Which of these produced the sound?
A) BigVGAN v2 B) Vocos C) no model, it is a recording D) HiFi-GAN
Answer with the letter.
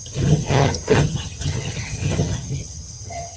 D